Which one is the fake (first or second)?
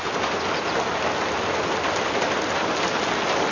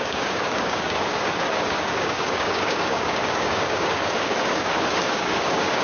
second